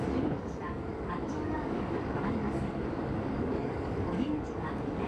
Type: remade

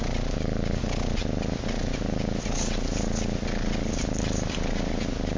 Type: recorded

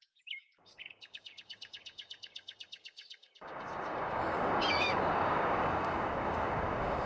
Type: remade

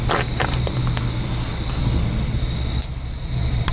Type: recorded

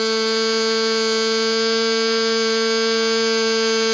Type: recorded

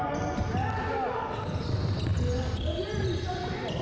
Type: recorded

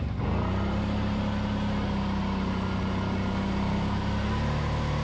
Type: recorded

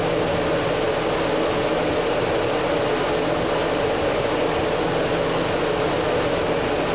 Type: recorded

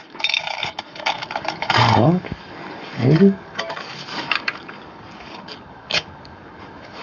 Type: remade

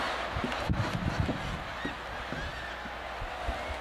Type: recorded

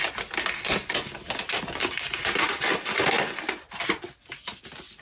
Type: recorded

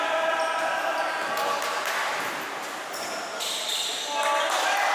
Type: recorded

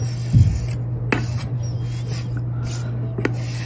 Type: recorded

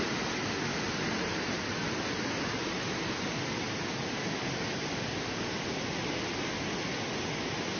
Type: recorded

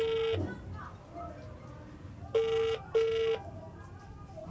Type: recorded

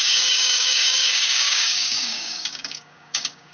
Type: remade